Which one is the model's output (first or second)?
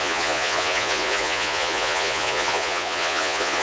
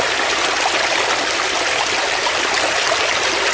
first